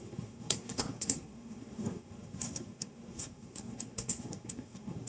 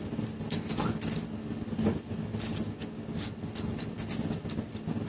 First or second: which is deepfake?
first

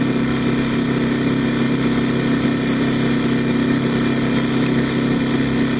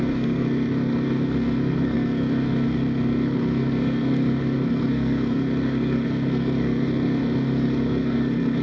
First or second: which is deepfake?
second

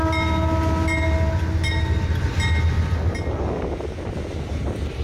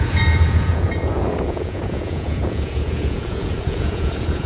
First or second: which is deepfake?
second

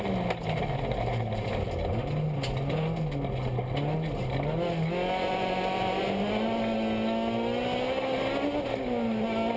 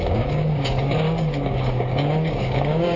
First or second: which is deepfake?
second